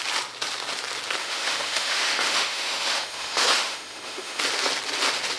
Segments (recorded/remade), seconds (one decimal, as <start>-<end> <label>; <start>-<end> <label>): 0.0-1.2 recorded; 1.2-4.4 remade; 4.4-5.4 recorded